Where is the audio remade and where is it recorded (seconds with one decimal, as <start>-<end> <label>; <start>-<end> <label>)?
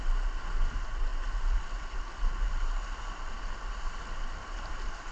0.0-5.1 recorded